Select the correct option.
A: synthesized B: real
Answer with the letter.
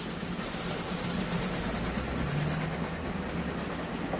B